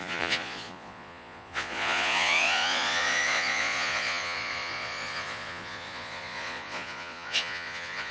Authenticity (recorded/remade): remade